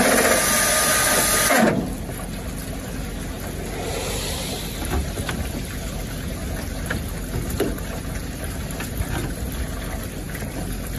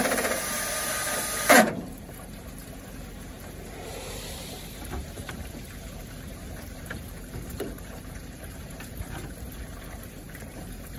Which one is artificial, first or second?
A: second